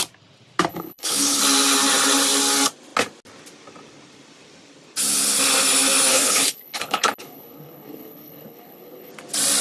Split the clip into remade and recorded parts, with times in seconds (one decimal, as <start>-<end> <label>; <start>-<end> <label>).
0.0-0.7 recorded; 0.7-1.4 remade; 1.4-6.1 recorded; 6.1-9.1 remade; 9.1-9.6 recorded